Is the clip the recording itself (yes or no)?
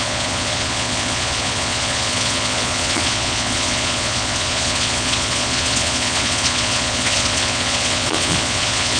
no